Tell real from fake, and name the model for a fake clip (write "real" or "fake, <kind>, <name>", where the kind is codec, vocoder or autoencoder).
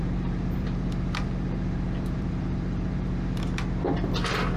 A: fake, vocoder, BigVGAN v2